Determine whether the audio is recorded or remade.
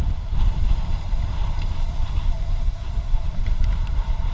remade